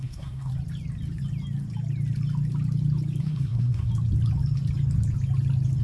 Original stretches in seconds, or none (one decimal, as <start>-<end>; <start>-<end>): 0.5-3.2; 3.9-5.8